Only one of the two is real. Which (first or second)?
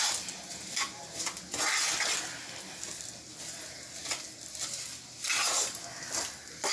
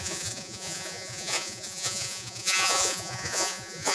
first